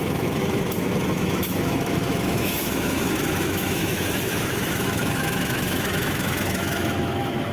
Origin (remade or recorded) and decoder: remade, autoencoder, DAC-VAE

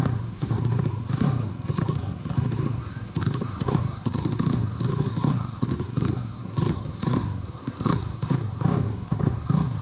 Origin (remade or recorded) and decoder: remade, codec, SNAC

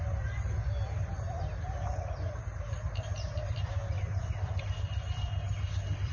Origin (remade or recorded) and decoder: recorded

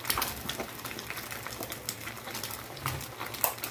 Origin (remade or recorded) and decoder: recorded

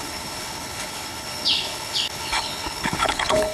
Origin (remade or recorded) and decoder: remade, codec, HILCodec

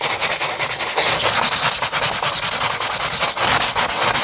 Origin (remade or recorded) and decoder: recorded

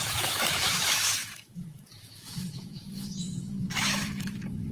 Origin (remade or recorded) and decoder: remade, autoencoder, DAC-VAE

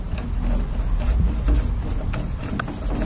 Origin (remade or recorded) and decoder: recorded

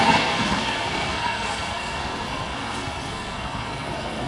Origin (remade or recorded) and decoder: remade, codec, SNAC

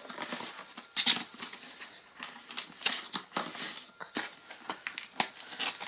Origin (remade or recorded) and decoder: recorded